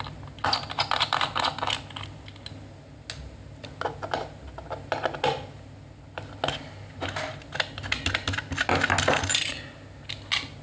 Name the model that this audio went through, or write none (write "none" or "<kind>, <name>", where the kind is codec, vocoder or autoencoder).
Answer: none